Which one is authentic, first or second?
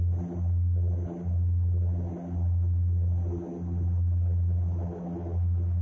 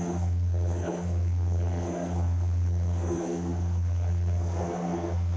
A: first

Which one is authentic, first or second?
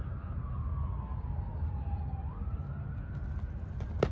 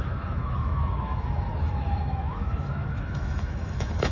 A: first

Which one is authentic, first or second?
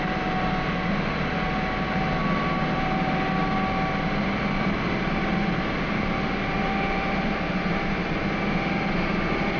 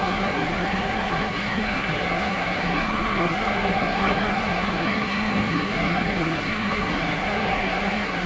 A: first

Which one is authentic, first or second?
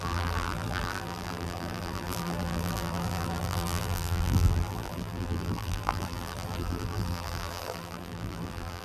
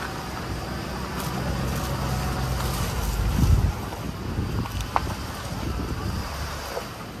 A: second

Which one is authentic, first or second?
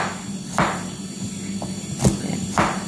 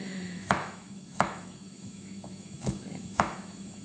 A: first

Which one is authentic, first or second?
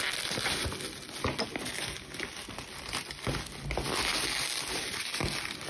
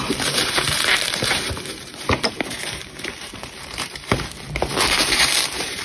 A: first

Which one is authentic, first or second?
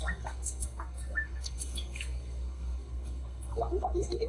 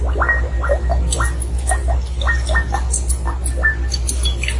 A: second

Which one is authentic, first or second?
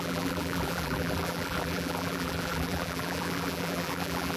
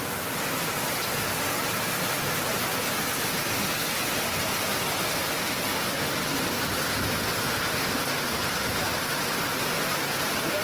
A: second